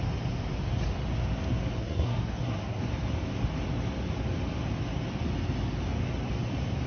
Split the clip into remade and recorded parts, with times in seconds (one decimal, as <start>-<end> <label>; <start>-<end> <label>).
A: 0.0-1.8 recorded; 1.8-2.8 remade; 2.8-6.9 recorded